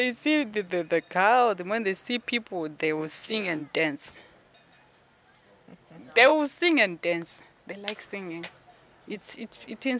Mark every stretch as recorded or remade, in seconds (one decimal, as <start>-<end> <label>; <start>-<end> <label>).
0.0-3.0 recorded; 3.0-3.6 remade; 3.6-10.0 recorded